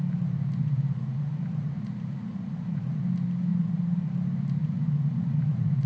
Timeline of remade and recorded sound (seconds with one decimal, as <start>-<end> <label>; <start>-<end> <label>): 0.0-0.6 recorded; 0.6-3.0 remade; 3.0-3.5 recorded; 3.5-4.1 remade; 4.1-4.6 recorded; 4.6-5.9 remade